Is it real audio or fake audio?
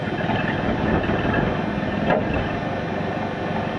real